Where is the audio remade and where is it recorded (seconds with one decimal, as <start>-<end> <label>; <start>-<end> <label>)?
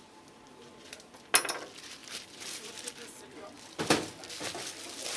0.0-2.0 recorded; 2.0-2.7 remade; 2.7-5.2 recorded